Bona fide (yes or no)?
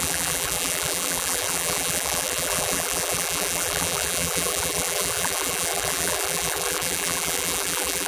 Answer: no